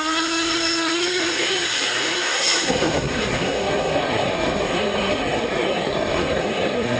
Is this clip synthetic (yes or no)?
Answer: yes